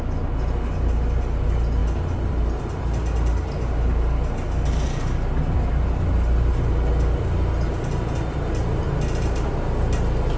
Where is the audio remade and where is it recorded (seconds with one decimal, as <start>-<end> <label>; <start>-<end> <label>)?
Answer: 0.0-10.4 recorded